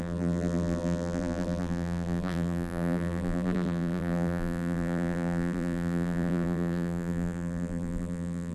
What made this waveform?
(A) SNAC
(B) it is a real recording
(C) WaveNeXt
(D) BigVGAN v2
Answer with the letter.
D